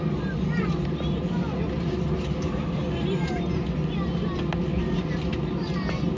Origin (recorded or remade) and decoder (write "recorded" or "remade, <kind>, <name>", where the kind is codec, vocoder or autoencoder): recorded